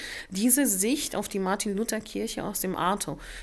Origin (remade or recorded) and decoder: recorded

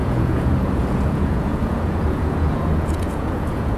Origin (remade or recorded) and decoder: remade, vocoder, Vocos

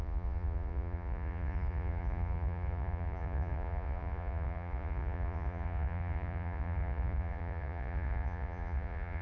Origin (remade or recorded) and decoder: remade, vocoder, Vocos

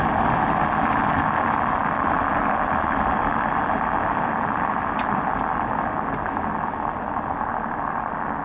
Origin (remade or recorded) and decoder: recorded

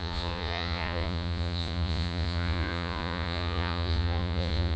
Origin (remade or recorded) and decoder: remade, vocoder, Vocos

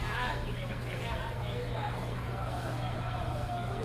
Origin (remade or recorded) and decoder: remade, codec, SNAC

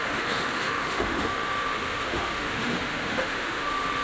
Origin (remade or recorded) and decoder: remade, autoencoder, DAC-VAE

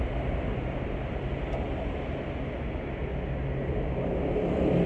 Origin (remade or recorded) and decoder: recorded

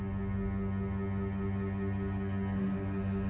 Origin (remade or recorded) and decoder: recorded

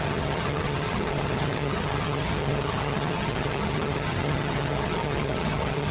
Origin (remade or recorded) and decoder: remade, vocoder, HiFi-GAN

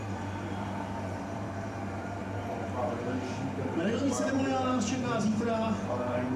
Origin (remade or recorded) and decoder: remade, vocoder, BigVGAN v2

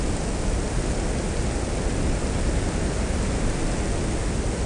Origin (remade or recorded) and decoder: recorded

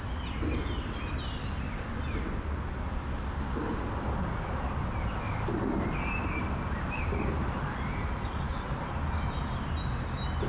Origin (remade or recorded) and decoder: recorded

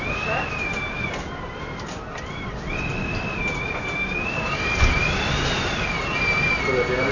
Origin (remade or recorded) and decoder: recorded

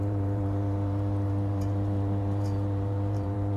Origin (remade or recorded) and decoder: remade, vocoder, BigVGAN v2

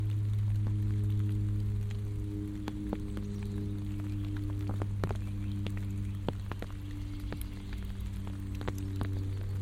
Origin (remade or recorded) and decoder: recorded